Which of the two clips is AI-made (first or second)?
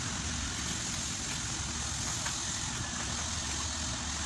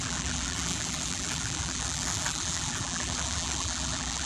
second